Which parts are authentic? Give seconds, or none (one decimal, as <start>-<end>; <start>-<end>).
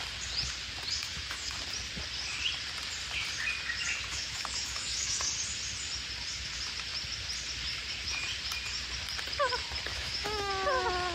0.0-1.0; 1.6-4.1; 5.3-9.9; 10.5-11.1